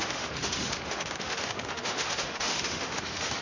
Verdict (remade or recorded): remade